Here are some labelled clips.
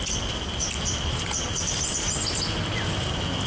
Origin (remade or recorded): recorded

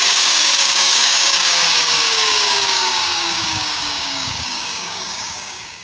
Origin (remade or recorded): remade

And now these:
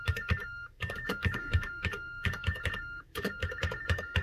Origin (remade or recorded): remade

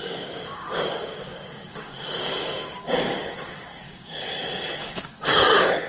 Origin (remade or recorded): remade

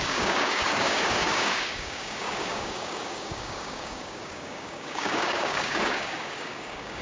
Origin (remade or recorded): remade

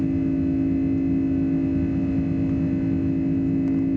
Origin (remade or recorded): recorded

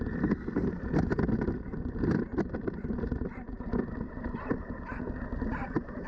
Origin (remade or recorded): recorded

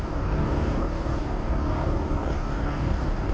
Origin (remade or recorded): remade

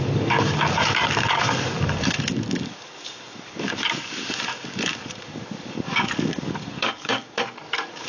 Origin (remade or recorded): remade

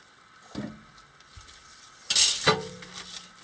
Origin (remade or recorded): recorded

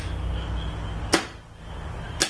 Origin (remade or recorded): recorded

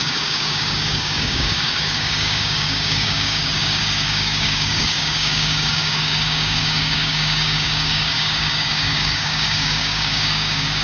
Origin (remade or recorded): remade